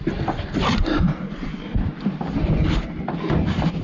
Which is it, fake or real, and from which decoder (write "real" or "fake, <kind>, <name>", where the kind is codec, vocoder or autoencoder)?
fake, vocoder, BigVGAN v2